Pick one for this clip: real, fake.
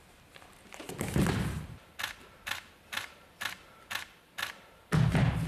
real